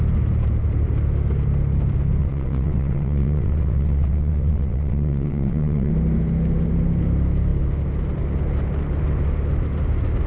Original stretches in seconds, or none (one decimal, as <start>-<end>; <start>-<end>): 0.0-2.2; 5.9-10.3